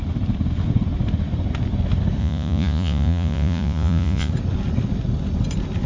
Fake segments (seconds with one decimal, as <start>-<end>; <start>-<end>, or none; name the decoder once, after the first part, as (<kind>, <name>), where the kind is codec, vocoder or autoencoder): 2.2-4.3 (vocoder, Vocos)